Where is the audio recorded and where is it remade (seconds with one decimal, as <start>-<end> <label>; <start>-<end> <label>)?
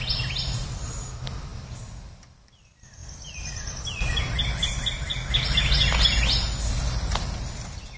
0.0-8.0 recorded